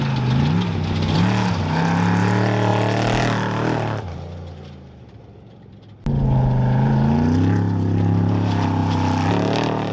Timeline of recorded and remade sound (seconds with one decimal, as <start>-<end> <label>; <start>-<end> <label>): 0.0-9.9 recorded